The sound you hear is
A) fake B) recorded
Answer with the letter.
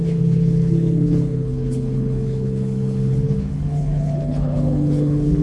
A